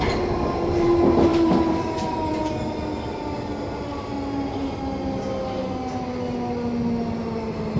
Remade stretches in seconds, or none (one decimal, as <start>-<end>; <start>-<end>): 1.3-2.4